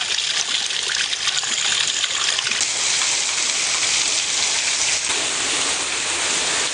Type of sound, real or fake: real